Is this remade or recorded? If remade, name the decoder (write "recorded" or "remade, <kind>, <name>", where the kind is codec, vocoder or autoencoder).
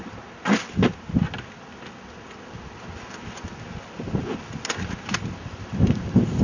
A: recorded